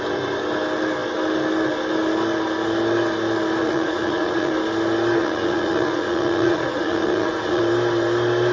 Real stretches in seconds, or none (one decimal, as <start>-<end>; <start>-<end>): 0.0-3.6; 4.5-5.2; 7.6-8.5